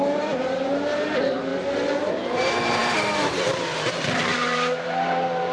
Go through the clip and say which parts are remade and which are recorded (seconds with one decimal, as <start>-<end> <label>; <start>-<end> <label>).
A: 0.0-1.5 remade; 1.5-2.0 recorded; 2.0-5.5 remade